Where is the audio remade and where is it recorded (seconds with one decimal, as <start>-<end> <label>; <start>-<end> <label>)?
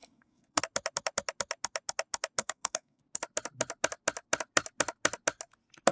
0.0-0.6 remade; 0.6-2.4 recorded; 2.4-3.0 remade; 3.0-5.9 recorded